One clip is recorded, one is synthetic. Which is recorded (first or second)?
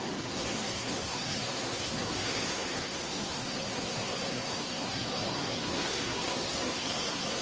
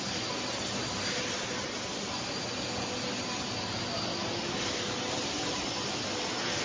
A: second